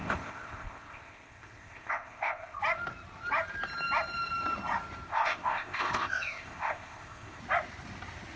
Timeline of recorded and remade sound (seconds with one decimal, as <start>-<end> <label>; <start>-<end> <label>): 0.0-2.6 remade; 2.6-5.1 recorded; 5.1-7.4 remade; 7.4-8.4 recorded